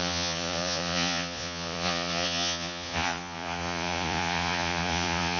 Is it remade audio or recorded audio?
remade